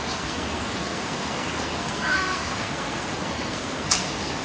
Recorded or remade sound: remade